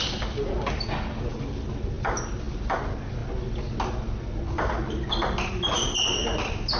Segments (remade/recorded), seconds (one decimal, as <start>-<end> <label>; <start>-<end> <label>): 0.0-6.8 recorded